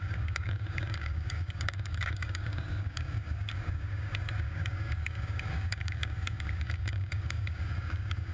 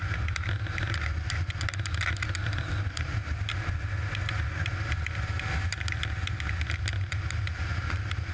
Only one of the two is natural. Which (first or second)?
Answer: second